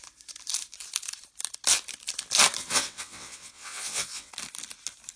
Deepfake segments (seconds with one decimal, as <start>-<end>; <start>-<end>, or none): 2.6-4.3